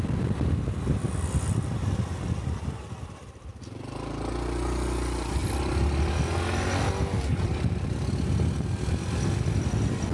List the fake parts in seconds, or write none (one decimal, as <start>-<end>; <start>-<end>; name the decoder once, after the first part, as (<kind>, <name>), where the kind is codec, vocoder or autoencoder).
none